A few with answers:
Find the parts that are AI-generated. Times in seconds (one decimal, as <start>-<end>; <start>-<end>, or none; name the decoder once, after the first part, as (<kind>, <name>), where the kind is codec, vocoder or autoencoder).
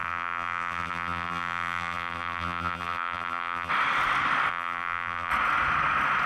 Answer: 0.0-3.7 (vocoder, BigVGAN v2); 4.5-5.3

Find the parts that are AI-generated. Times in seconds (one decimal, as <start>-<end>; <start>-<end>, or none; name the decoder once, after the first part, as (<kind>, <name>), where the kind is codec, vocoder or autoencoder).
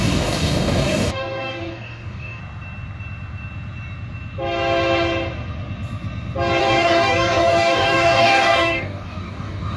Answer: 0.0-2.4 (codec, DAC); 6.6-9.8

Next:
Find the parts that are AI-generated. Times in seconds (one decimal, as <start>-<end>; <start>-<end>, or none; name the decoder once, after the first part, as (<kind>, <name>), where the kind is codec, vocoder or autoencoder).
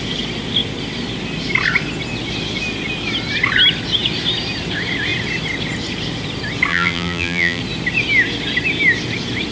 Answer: 6.7-7.6 (vocoder, BigVGAN v2)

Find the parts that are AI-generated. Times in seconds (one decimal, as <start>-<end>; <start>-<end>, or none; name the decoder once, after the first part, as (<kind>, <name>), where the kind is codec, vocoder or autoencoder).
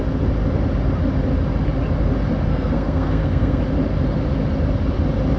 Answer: 2.5-3.6 (codec, SNAC)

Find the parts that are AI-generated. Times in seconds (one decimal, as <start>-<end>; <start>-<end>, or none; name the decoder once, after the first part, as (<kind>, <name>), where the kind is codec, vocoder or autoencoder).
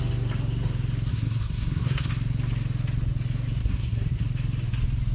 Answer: 1.1-2.1 (codec, SNAC); 3.6-4.2